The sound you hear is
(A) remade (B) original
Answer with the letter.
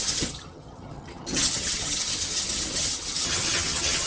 A